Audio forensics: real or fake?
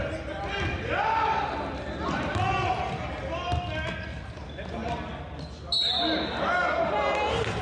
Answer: real